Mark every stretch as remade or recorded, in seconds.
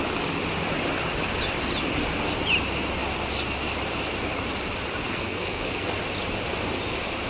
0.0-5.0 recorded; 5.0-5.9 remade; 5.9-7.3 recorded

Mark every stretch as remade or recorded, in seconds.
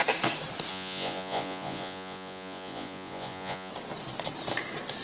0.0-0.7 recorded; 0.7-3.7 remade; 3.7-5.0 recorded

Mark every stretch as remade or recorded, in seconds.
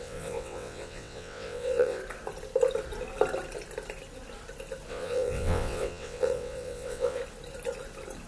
0.0-2.0 remade; 2.0-4.9 recorded; 4.9-7.2 remade; 7.2-8.3 recorded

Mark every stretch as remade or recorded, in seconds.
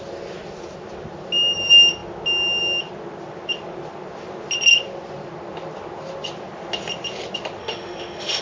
0.0-7.6 recorded; 7.6-8.4 remade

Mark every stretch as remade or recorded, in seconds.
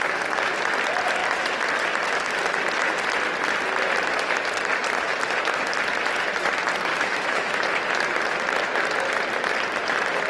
0.0-6.9 recorded; 6.9-7.6 remade; 7.6-10.3 recorded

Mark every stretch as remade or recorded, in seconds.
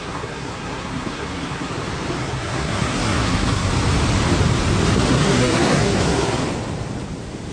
0.0-1.7 remade; 1.7-2.2 recorded; 2.2-3.7 remade; 3.7-5.1 recorded; 5.1-6.4 remade; 6.4-7.5 recorded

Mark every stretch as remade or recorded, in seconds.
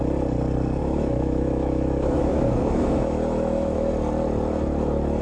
0.0-0.8 recorded; 0.8-3.9 remade; 3.9-5.2 recorded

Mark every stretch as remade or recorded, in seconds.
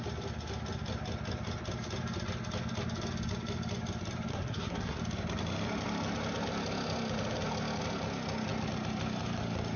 0.0-4.3 recorded; 4.3-5.0 remade; 5.0-9.8 recorded